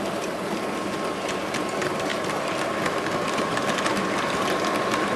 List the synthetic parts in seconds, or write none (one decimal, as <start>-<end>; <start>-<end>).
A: none